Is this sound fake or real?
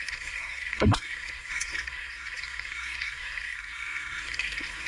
fake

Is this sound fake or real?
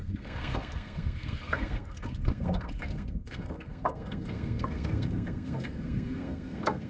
fake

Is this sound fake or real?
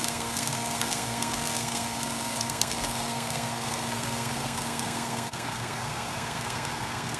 fake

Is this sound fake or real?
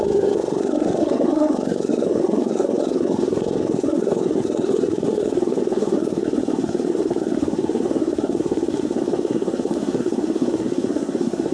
fake